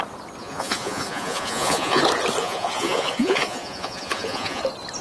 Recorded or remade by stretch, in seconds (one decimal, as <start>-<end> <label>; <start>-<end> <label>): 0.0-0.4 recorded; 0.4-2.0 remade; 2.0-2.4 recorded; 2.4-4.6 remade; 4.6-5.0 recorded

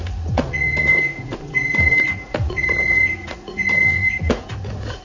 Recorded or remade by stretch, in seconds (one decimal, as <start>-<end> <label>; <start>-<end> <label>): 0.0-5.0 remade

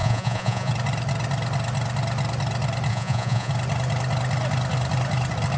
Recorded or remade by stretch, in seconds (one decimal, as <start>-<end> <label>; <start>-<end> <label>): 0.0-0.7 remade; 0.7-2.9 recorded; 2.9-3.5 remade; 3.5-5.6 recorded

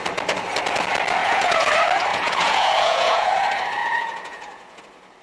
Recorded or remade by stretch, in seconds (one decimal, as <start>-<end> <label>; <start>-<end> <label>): 0.0-1.2 recorded; 1.2-1.7 remade; 1.7-2.1 recorded; 2.1-3.3 remade; 3.3-3.8 recorded; 3.8-4.8 remade; 4.8-5.2 recorded

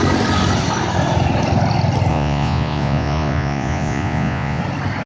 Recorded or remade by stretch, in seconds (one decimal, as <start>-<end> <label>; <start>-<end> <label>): 0.0-2.1 recorded; 2.1-4.6 remade; 4.6-5.1 recorded

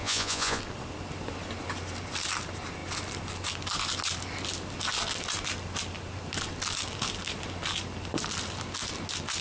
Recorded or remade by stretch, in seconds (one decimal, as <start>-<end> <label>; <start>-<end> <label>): 0.0-0.6 remade; 0.6-9.4 recorded

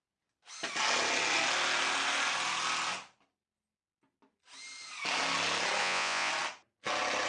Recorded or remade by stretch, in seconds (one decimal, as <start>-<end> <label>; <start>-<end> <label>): 0.0-5.8 recorded; 5.8-6.3 remade; 6.3-7.3 recorded

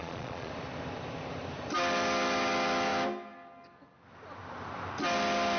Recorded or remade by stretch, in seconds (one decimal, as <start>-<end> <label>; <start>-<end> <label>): 0.0-0.5 remade; 0.5-5.6 recorded